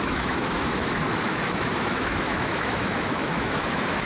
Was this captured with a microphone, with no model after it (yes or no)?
no